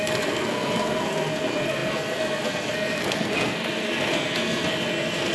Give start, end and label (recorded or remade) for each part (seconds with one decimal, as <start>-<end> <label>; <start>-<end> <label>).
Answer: 0.0-5.3 remade